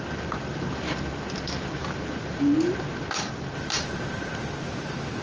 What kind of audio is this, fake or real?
real